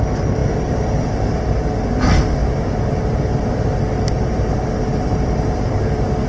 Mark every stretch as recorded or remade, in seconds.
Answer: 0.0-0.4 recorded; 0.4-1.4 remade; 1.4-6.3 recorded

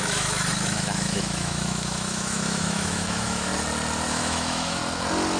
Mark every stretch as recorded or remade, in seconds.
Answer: 0.0-3.5 remade; 3.5-4.1 recorded; 4.1-4.8 remade; 4.8-5.4 recorded